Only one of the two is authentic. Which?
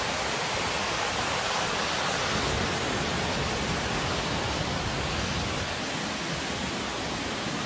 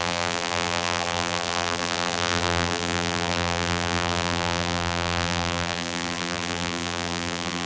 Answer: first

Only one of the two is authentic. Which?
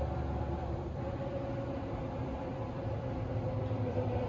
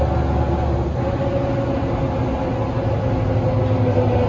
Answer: second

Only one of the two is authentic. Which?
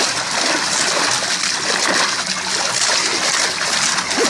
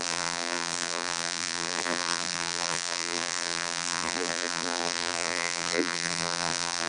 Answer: first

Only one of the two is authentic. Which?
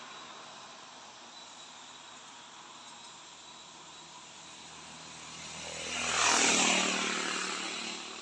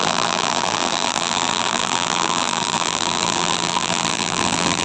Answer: first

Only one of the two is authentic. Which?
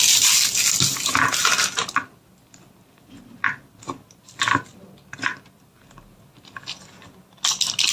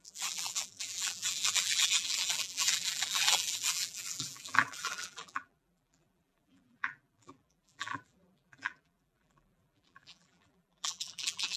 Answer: first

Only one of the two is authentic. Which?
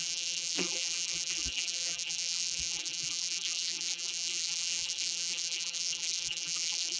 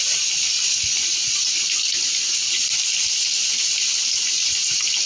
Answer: second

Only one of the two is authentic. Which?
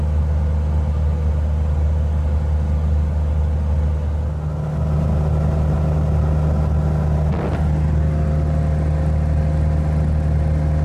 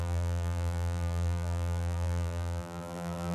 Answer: first